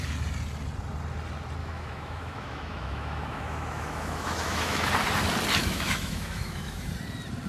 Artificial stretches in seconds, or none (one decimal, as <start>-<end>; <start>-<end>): 1.6-4.9; 5.6-6.9